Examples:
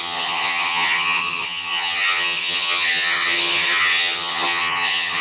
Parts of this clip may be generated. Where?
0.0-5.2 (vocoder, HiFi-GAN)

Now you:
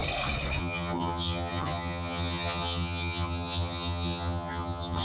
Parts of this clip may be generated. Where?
0.6-5.0 (vocoder, HiFi-GAN)

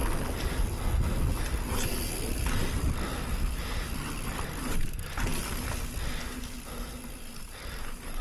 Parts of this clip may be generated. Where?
4.6-5.3 (vocoder, BigVGAN v2); 7.4-8.2

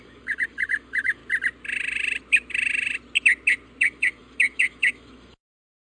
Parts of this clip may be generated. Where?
0.0-1.2 (autoencoder, DAC-VAE); 3.8-5.9

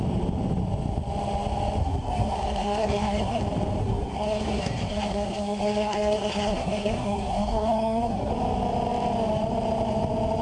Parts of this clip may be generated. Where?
1.8-3.4 (codec, SNAC); 3.8-8.3

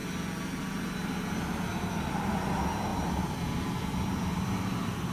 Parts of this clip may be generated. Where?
2.9-4.5 (vocoder, BigVGAN v2)

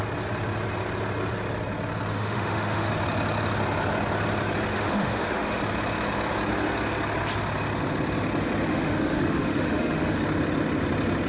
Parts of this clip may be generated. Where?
2.1-2.9 (autoencoder, DAC-VAE); 4.7-5.6; 8.7-10.2

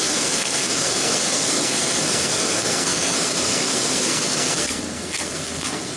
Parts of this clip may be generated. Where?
0.0-6.0 (codec, SNAC)